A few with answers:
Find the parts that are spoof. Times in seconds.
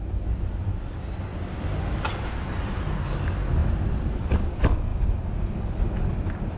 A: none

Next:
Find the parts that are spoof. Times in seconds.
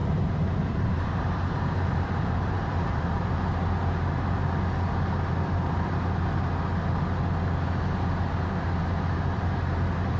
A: 0.0-3.3 (vocoder, BigVGAN v2)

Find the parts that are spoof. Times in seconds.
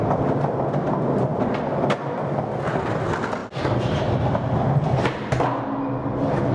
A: 3.4-5.6 (vocoder, BigVGAN v2)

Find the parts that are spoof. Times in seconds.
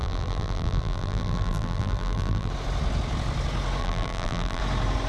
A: 0.0-2.5 (vocoder, BigVGAN v2); 3.8-4.6